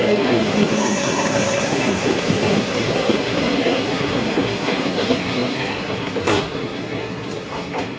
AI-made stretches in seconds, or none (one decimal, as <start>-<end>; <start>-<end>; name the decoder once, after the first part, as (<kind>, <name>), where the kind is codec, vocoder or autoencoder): 0.0-8.0 (codec, SNAC)

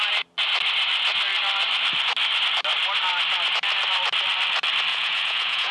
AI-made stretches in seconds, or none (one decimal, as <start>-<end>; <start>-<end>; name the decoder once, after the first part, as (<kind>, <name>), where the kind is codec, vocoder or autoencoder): 4.9-5.7 (vocoder, Vocos)